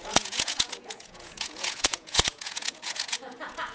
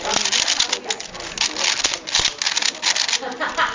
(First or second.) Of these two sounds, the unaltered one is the second